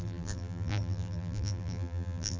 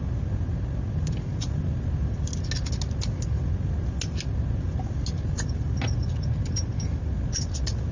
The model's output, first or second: first